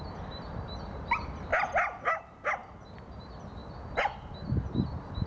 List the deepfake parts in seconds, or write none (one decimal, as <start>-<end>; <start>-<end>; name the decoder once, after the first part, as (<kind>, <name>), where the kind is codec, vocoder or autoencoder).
0.0-1.5 (vocoder, BigVGAN v2); 2.2-2.6; 3.2-3.6

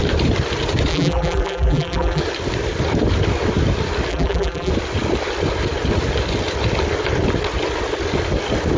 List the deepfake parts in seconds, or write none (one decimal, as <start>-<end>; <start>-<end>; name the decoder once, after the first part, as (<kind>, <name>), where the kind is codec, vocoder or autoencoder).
0.9-2.2 (vocoder, BigVGAN v2); 4.1-4.7